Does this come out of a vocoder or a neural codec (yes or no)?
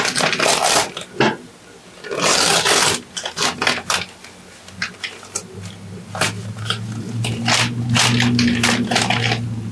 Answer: no